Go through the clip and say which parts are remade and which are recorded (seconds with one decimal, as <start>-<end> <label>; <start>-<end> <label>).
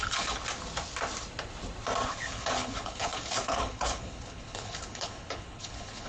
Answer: 0.0-0.4 remade; 0.4-2.1 recorded; 2.1-6.1 remade